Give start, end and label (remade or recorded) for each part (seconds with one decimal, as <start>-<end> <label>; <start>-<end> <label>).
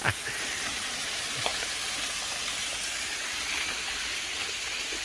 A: 0.0-5.0 recorded